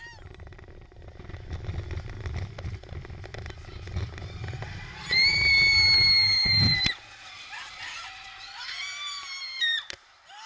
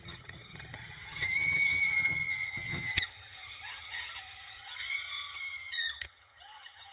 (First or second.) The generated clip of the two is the second